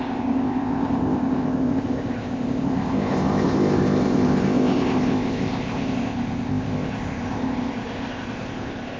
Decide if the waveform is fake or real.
fake